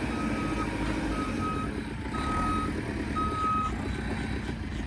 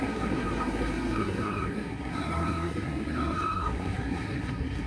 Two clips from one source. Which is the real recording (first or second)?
first